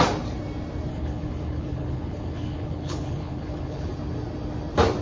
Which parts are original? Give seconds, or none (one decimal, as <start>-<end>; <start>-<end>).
0.0-0.9; 3.9-5.0